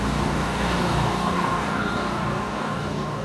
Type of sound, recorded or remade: remade